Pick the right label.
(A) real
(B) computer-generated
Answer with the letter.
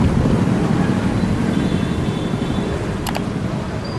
A